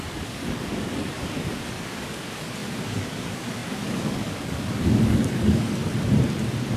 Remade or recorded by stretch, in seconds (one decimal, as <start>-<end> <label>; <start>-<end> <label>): 0.0-5.8 remade; 5.8-6.8 recorded